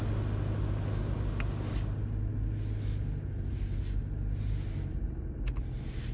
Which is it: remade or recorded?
recorded